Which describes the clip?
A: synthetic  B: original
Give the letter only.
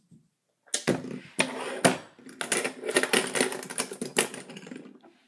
B